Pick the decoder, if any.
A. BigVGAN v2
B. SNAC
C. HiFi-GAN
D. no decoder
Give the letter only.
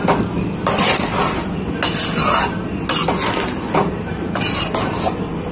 D